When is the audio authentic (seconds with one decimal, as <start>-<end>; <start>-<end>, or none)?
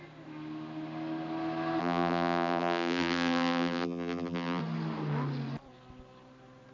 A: 0.0-1.8; 4.6-6.7